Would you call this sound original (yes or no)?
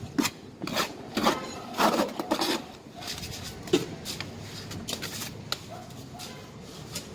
yes